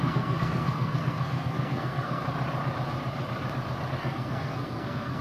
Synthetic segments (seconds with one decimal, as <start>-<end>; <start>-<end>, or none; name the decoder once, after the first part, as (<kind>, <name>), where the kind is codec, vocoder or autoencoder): 0.0-2.2 (codec, SNAC); 3.9-5.2